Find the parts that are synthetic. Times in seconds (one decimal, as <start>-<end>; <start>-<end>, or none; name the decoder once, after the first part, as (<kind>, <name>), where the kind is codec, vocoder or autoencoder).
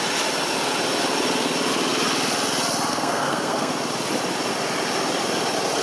2.9-3.7 (codec, SNAC)